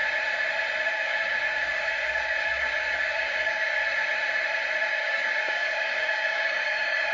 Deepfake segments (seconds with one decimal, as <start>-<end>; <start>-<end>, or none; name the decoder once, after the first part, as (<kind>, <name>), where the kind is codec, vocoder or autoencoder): 0.9-3.8 (codec, DAC); 4.9-7.1